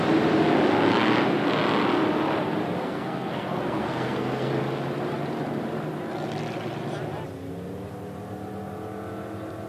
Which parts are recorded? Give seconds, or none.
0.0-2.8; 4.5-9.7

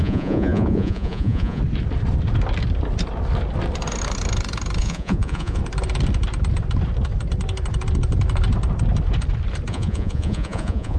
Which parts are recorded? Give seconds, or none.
1.6-4.8; 5.6-9.7

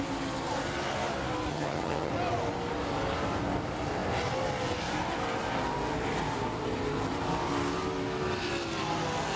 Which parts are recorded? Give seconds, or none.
0.0-1.5; 2.1-9.4